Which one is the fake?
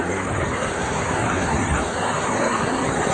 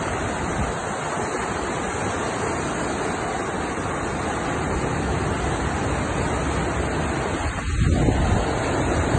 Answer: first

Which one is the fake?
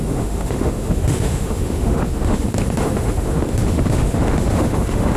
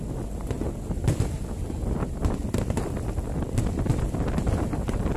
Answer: first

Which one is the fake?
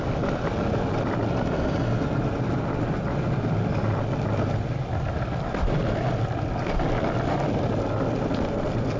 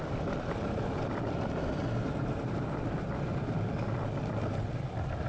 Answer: second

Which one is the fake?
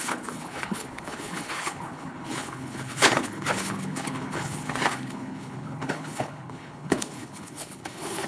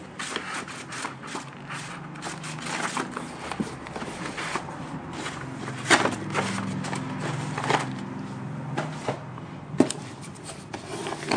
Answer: first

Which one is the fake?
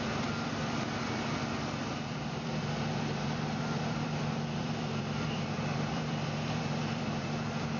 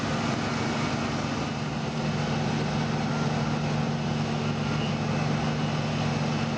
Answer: first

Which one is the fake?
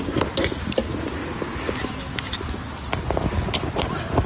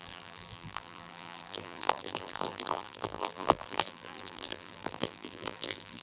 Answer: second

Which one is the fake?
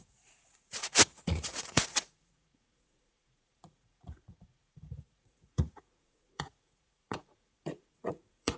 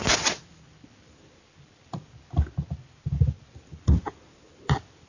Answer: first